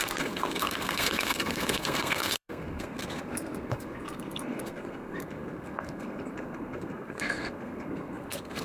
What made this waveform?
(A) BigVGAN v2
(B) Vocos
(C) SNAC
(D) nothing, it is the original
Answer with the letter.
C